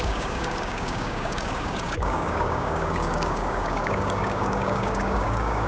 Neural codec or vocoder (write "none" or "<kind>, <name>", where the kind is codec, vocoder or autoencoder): codec, DAC